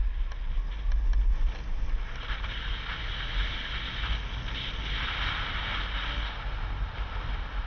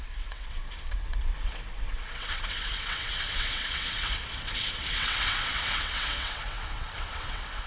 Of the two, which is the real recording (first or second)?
first